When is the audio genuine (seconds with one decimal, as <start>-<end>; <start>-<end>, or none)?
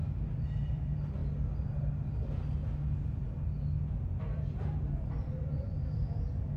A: 1.2-3.8